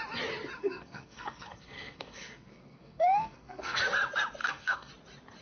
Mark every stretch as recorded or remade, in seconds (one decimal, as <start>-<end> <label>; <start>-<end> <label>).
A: 0.0-0.6 recorded; 0.6-3.8 remade; 3.8-4.4 recorded; 4.4-4.9 remade; 4.9-5.4 recorded